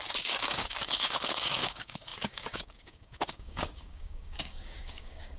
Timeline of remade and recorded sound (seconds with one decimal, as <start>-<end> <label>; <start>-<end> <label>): 0.0-5.4 remade